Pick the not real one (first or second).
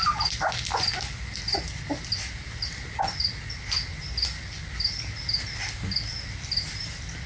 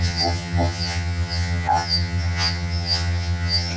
second